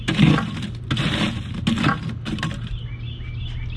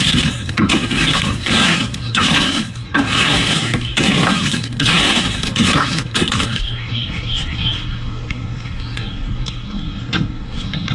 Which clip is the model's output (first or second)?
second